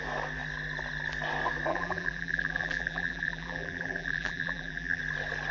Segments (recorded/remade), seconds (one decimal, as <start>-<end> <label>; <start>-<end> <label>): 0.0-1.7 recorded; 1.7-5.0 remade; 5.0-5.5 recorded